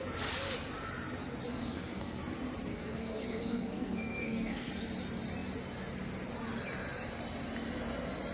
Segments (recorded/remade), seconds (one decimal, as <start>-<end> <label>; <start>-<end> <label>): 0.0-1.5 recorded; 1.5-2.2 remade; 2.2-2.7 recorded; 2.7-4.7 remade; 4.7-8.3 recorded